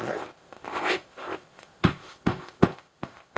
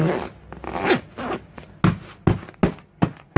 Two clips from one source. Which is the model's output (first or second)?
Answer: first